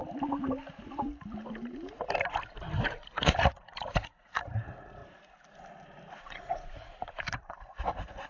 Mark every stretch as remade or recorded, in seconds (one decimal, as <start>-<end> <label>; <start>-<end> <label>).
0.0-3.1 recorded; 3.1-5.0 remade; 5.0-6.2 recorded; 6.2-8.3 remade